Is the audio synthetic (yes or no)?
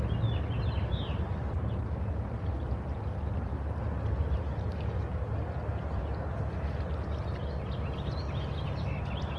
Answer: no